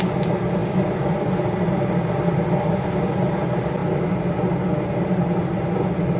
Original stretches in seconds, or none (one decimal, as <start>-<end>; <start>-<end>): 0.0-6.2